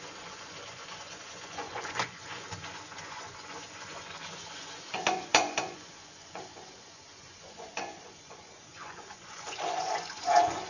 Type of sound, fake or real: fake